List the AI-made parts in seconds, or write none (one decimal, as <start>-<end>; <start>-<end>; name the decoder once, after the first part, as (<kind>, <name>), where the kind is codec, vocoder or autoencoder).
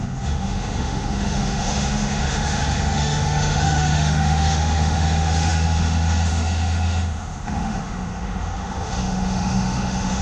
0.0-10.2 (autoencoder, DAC-VAE)